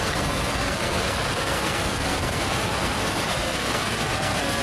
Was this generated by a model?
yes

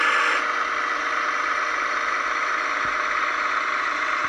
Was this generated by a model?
no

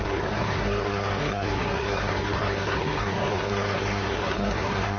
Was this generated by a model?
yes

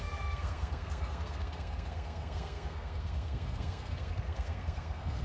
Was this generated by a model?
yes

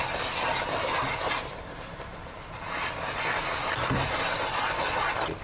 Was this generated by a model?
no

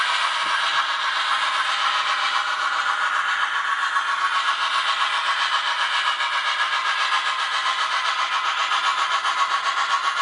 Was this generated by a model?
no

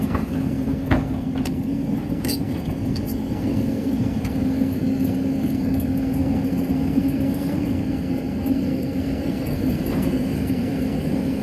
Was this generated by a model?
yes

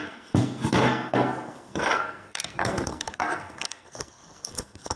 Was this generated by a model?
yes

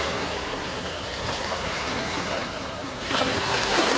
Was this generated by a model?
yes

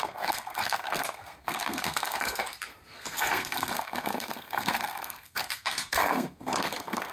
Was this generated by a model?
yes